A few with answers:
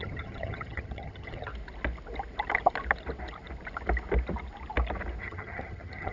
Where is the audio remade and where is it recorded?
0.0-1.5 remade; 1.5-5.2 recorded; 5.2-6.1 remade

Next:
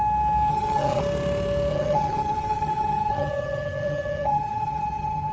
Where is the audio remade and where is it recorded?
0.0-0.5 recorded; 0.5-1.0 remade; 1.0-1.7 recorded; 1.7-5.3 remade

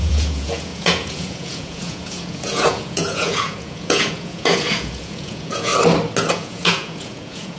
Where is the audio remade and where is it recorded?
0.0-5.7 remade; 5.7-6.3 recorded; 6.3-7.6 remade

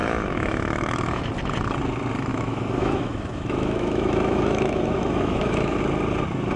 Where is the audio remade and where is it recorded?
0.0-1.2 remade; 1.2-2.3 recorded; 2.3-5.8 remade; 5.8-6.6 recorded